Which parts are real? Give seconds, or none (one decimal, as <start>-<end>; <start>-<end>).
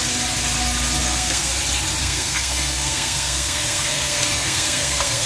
0.0-1.0; 1.5-2.0